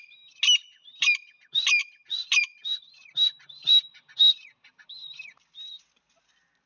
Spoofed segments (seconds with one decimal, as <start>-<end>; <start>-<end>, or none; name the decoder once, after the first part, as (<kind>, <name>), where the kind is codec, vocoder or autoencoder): none